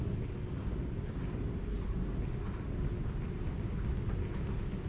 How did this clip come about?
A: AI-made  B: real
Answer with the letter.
B